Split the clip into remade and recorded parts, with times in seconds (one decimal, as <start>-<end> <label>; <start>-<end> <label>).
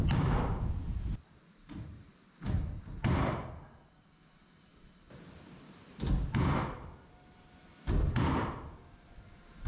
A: 0.0-9.7 recorded